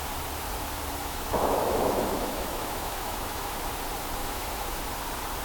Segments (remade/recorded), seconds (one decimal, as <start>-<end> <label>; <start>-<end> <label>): 0.0-1.0 recorded; 1.0-3.6 remade; 3.6-4.2 recorded; 4.2-4.8 remade; 4.8-5.4 recorded

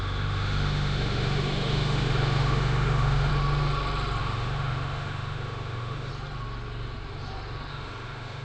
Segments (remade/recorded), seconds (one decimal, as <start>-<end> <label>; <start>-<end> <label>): 0.0-3.3 remade; 3.3-4.2 recorded; 4.2-6.1 remade; 6.1-7.7 recorded; 7.7-8.4 remade

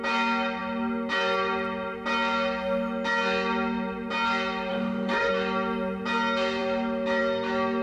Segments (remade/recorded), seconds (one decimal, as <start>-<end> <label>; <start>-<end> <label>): 0.0-4.7 recorded; 4.7-5.3 remade; 5.3-7.8 recorded

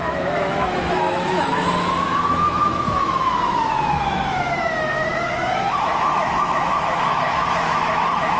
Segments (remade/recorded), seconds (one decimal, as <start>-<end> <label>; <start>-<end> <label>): 0.0-8.4 remade